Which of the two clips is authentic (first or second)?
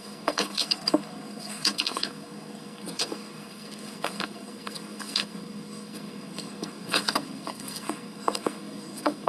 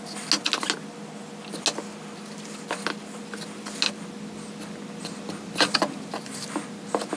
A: second